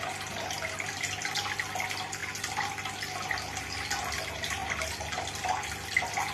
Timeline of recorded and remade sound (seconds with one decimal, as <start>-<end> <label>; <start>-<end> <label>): 0.0-6.3 recorded